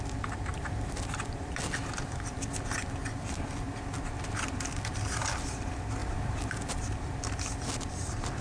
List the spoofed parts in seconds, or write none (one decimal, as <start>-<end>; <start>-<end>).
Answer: 0.0-8.4